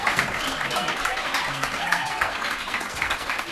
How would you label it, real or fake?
fake